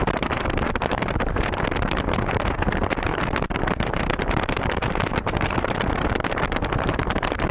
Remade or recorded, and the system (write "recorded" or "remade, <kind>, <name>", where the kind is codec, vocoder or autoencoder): remade, vocoder, BigVGAN v2